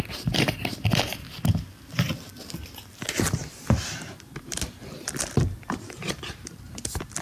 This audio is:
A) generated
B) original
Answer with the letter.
B